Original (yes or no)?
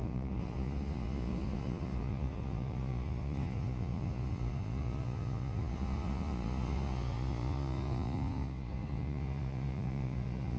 no